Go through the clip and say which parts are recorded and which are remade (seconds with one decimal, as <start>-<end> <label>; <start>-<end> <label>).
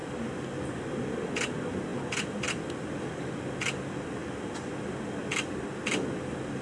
0.0-6.6 recorded